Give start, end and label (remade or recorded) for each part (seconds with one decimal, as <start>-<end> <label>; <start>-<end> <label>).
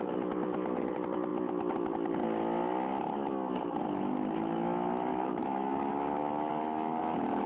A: 0.0-5.1 recorded; 5.1-5.9 remade; 5.9-6.5 recorded; 6.5-7.0 remade; 7.0-7.5 recorded